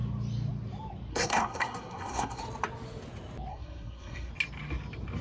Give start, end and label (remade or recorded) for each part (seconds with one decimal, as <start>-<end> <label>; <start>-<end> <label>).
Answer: 0.0-1.1 recorded; 1.1-2.4 remade; 2.4-3.5 recorded; 3.5-4.3 remade; 4.3-5.2 recorded